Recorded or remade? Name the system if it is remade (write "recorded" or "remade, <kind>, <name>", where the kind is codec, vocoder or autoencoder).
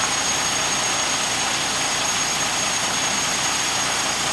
recorded